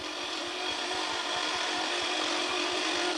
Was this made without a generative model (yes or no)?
no